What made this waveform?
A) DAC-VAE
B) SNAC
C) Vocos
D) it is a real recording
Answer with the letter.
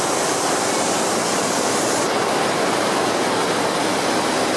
D